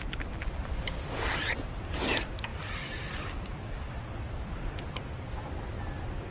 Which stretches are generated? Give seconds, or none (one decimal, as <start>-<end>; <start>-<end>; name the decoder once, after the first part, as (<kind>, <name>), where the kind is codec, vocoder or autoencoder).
none